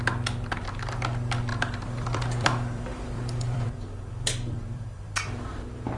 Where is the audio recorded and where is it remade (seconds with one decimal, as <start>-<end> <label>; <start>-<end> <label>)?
0.0-1.5 recorded; 1.5-5.1 remade; 5.1-6.0 recorded